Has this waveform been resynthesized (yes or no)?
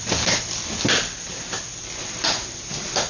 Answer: no